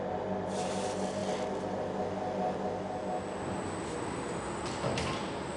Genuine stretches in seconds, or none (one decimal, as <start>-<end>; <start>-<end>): 0.0-5.6